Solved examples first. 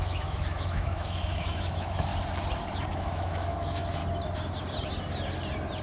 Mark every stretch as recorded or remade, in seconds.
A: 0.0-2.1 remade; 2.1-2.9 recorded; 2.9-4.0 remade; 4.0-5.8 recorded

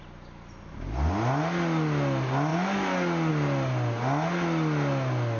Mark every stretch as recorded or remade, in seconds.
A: 0.0-5.4 recorded

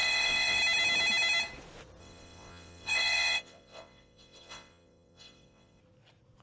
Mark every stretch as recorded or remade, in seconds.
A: 0.0-0.6 remade; 0.6-2.0 recorded; 2.0-5.8 remade; 5.8-6.4 recorded

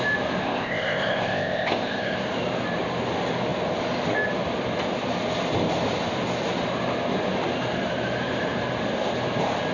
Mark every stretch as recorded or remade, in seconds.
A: 0.0-0.4 recorded; 0.4-2.2 remade; 2.2-9.7 recorded

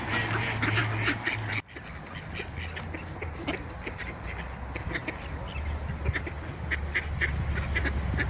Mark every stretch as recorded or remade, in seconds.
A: 0.0-8.3 recorded

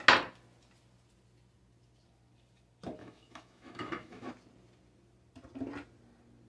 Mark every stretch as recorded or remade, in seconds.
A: 0.0-3.0 recorded; 3.0-4.3 remade; 4.3-6.5 recorded

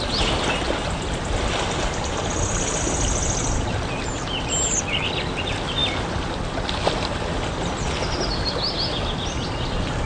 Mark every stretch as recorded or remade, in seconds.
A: 0.0-10.1 recorded